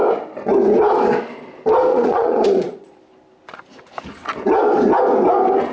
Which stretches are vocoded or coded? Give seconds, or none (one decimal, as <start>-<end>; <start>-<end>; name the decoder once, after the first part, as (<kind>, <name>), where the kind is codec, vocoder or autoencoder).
1.9-3.0 (vocoder, Vocos)